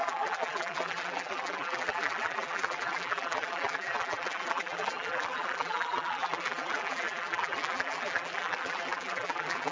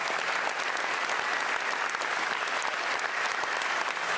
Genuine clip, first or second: second